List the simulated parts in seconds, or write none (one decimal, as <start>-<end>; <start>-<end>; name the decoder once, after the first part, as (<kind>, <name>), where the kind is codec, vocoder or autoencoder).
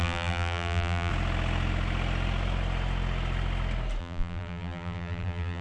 0.0-1.1 (vocoder, BigVGAN v2); 4.0-5.6